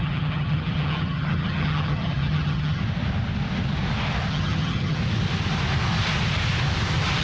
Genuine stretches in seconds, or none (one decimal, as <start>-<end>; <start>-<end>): 2.8-4.3; 5.0-7.2